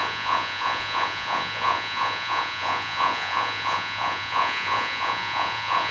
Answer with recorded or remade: remade